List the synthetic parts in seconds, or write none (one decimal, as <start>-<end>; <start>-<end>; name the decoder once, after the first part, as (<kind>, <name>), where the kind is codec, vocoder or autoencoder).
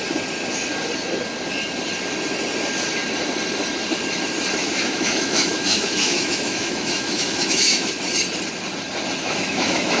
4.6-7.9 (autoencoder, DAC-VAE); 9.2-10.0